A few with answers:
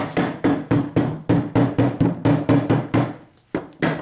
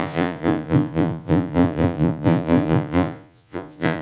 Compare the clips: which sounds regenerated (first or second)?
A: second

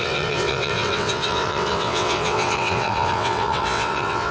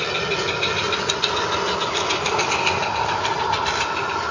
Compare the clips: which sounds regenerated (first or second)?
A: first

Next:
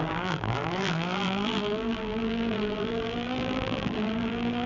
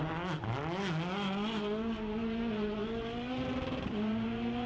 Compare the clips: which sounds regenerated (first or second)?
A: first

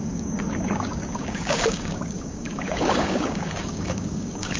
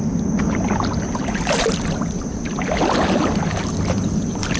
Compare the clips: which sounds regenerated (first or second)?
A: first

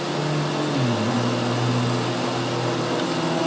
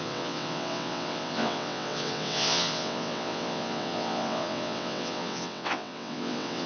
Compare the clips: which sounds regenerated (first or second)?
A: second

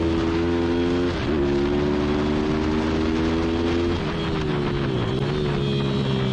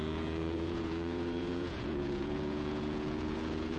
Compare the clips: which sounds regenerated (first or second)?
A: second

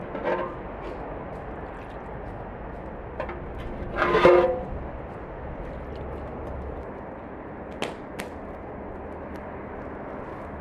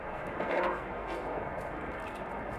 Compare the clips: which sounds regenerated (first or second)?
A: second